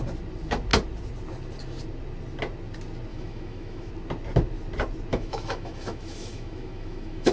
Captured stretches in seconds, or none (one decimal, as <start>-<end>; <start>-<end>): 0.0-3.1; 3.9-5.1